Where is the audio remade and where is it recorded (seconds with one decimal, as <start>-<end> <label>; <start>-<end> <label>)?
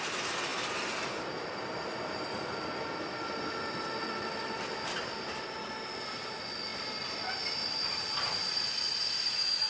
0.0-9.7 recorded